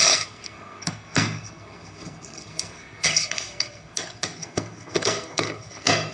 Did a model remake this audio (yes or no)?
yes